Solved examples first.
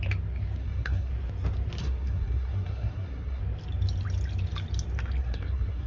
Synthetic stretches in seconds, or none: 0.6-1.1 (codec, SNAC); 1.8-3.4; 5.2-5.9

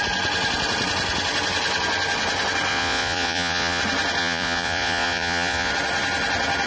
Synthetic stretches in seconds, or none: 2.7-3.8 (vocoder, Vocos); 4.2-5.7

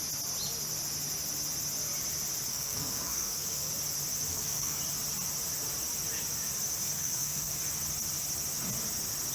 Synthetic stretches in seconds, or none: 2.5-3.7 (codec, SNAC); 4.3-4.8; 6.8-7.6

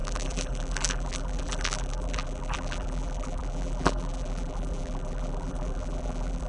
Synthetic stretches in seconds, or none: 0.0-6.5 (vocoder, BigVGAN v2)

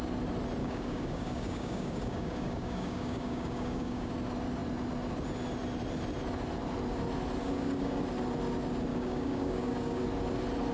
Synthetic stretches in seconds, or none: 0.6-4.1 (codec, DAC); 7.4-8.0; 8.9-10.0